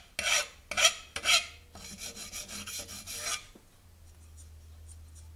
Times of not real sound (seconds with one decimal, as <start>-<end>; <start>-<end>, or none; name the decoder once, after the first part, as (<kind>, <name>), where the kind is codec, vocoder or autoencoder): none